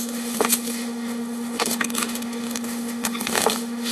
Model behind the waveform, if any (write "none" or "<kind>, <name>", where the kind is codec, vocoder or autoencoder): autoencoder, DAC-VAE